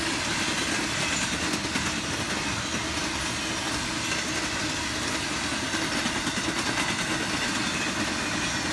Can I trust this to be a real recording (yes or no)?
yes